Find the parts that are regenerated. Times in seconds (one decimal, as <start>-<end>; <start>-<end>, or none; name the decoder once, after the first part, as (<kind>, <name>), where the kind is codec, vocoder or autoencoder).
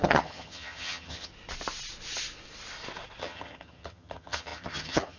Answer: 0.0-1.3 (vocoder, HiFi-GAN); 3.2-5.2